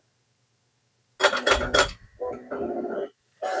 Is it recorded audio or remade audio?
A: recorded